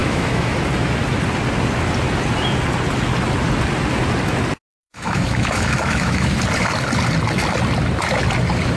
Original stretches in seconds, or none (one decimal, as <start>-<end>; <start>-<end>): 0.6-4.7; 6.3-8.8